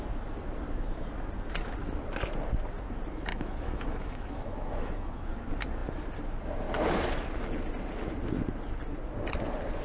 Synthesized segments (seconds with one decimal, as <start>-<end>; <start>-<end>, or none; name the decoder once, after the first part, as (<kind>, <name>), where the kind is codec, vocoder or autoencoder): 3.3-5.3 (autoencoder, DAC-VAE)